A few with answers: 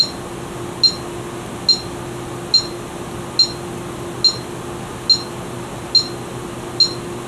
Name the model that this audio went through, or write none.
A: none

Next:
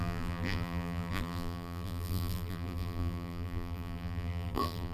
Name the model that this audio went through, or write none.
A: vocoder, BigVGAN v2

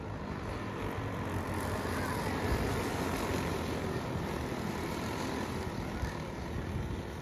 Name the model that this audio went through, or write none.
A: none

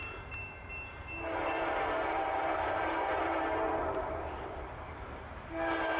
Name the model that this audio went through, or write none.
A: vocoder, BigVGAN v2